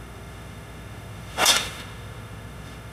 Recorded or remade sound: remade